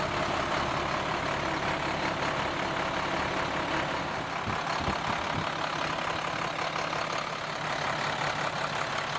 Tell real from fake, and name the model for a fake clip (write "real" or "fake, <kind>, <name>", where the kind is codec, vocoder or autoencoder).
real